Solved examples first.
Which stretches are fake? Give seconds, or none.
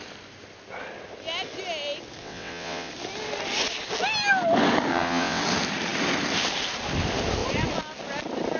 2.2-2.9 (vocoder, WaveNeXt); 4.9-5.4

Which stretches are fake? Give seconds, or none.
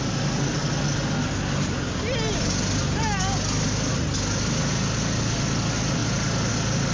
none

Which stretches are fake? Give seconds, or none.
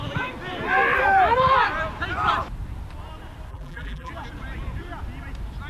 3.5-4.1 (vocoder, BigVGAN v2)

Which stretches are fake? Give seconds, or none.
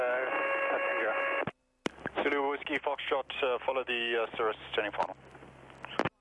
none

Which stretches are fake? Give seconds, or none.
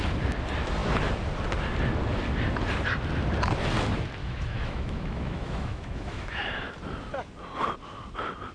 4.2-6.7 (autoencoder, DAC-VAE)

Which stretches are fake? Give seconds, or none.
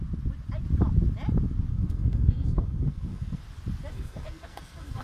1.7-3.4 (codec, SNAC); 3.9-5.0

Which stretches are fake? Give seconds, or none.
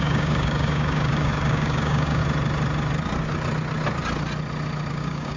0.0-2.2 (codec, DAC); 4.9-5.4